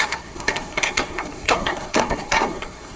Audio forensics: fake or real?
fake